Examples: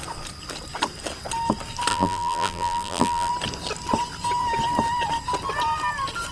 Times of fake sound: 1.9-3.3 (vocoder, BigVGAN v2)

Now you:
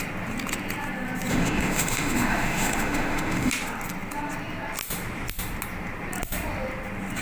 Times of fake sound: 1.3-3.5 (autoencoder, DAC-VAE)

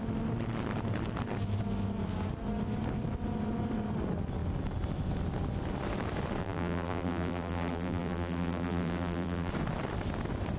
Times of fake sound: 6.4-9.5 (vocoder, BigVGAN v2)

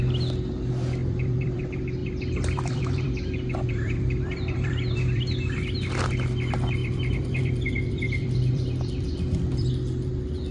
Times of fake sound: 1.0-1.6 (vocoder, BigVGAN v2); 2.0-5.2; 6.8-9.7

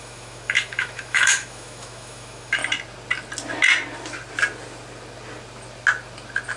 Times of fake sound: 0.0-2.6 (autoencoder, DAC-VAE)

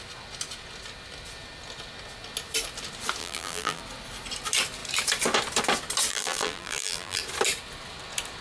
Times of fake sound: 3.2-3.8 (vocoder, BigVGAN v2); 6.1-7.2

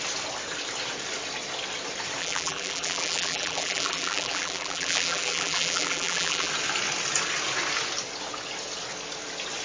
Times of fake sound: 2.2-6.5 (vocoder, BigVGAN v2)